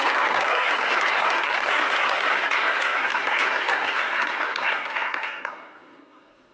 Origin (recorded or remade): remade